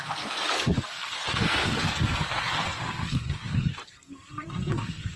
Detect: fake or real fake